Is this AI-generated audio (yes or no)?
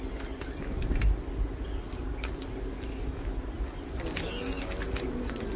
no